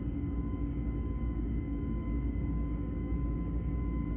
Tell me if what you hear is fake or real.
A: fake